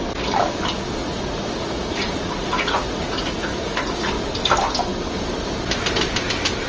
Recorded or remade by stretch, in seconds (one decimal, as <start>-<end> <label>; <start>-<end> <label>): 0.0-1.0 recorded; 1.0-4.1 remade; 4.1-6.7 recorded